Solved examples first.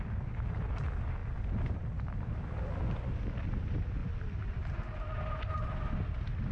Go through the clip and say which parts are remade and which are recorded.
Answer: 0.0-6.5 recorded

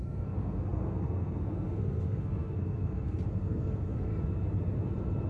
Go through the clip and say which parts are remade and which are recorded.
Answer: 0.0-4.1 remade; 4.1-5.3 recorded

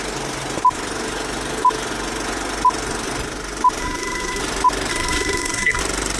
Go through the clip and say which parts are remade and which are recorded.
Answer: 0.0-3.8 recorded; 3.8-4.4 remade; 4.4-4.9 recorded; 4.9-5.8 remade; 5.8-6.2 recorded